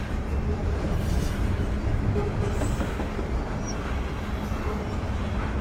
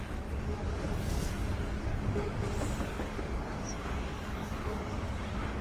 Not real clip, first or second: second